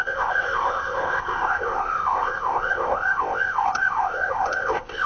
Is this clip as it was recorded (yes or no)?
no